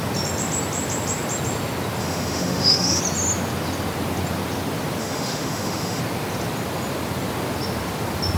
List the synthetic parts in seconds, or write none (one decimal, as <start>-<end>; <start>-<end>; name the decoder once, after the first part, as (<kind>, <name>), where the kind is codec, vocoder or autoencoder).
2.0-3.0 (autoencoder, DAC-VAE); 5.0-6.0